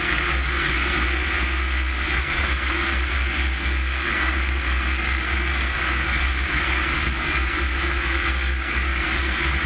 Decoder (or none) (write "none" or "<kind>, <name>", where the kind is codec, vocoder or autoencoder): codec, SNAC